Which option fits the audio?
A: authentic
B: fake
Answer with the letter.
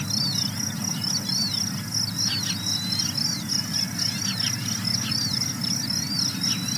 A